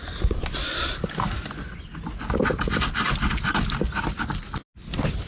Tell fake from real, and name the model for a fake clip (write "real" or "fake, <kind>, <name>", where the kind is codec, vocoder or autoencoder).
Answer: real